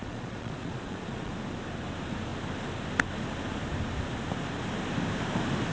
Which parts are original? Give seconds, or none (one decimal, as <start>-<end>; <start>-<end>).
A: 1.3-5.7